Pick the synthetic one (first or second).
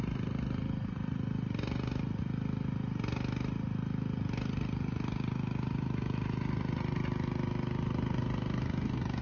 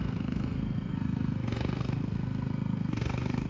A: second